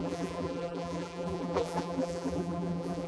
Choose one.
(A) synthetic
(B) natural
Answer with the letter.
A